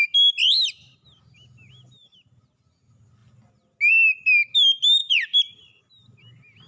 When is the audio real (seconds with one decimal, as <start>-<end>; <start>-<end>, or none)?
0.0-5.0; 5.8-6.7